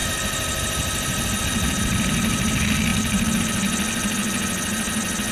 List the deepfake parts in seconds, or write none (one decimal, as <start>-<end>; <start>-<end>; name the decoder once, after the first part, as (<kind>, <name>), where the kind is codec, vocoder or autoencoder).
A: none